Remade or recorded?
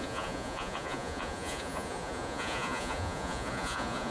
remade